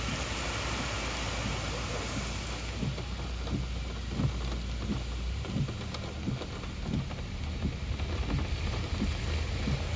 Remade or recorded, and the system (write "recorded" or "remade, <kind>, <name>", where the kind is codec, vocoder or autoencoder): recorded